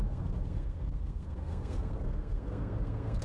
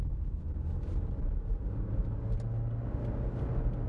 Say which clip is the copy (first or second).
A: first